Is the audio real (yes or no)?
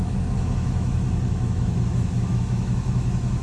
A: no